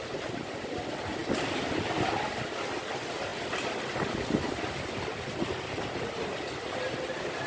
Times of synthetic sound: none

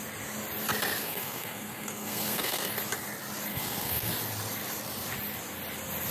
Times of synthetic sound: 1.0-2.7 (codec, SNAC); 3.5-4.1

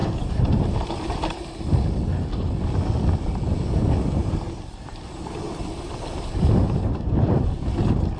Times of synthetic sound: 0.0-1.9 (vocoder, BigVGAN v2); 4.2-7.5

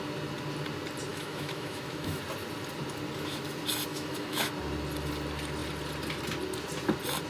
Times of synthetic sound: 1.1-2.2 (autoencoder, DAC-VAE); 3.9-4.5

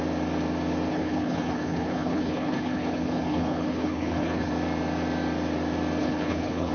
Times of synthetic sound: 0.9-4.5 (codec, HILCodec); 6.0-6.7

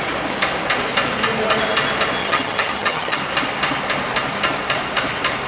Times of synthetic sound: 2.2-3.2 (vocoder, HiFi-GAN)

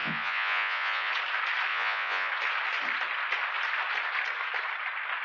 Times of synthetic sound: 0.0-1.1 (vocoder, Vocos); 1.7-2.3